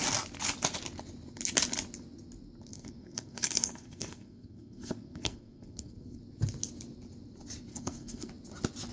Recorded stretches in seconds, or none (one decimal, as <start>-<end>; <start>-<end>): 0.0-2.7; 6.2-7.7; 8.3-8.9